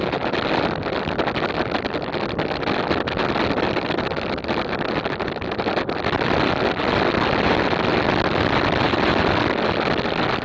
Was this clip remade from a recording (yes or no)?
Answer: no